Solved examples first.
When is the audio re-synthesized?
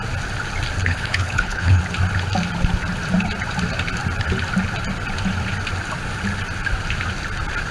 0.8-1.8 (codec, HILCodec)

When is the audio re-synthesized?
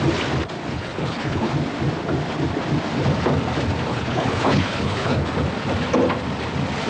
0.7-1.5 (codec, HILCodec); 3.9-5.3